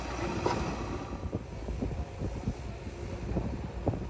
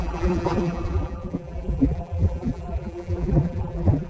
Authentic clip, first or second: first